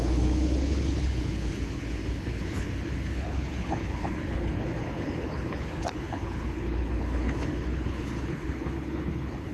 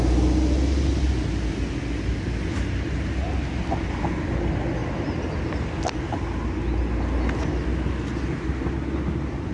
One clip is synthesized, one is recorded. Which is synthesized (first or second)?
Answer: first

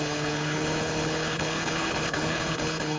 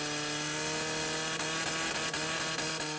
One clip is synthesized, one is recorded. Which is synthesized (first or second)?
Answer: first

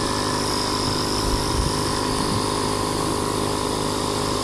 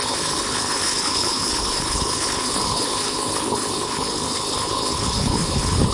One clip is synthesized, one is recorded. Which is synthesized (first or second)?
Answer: second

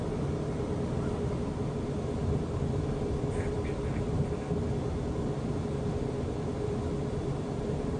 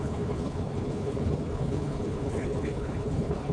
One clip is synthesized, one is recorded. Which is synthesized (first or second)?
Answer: second